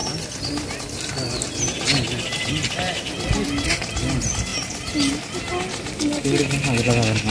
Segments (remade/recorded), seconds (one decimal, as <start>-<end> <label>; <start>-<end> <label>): 0.0-7.3 recorded